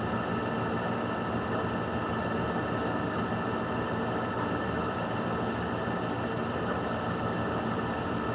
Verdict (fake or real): real